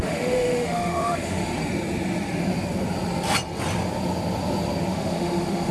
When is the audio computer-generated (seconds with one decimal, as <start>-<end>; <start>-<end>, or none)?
0.0-1.5; 4.9-5.7